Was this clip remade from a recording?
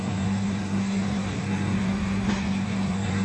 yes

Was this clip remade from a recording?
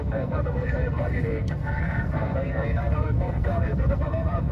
yes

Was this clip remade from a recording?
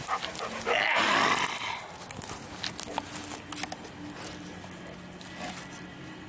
no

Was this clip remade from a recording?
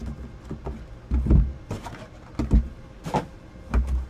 no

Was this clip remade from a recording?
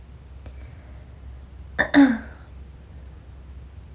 no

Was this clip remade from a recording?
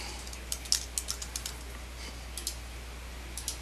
no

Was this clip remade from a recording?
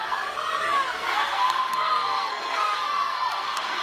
yes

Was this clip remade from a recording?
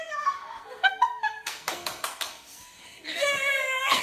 yes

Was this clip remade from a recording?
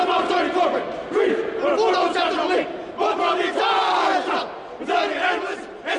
no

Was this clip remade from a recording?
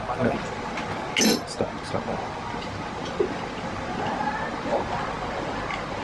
no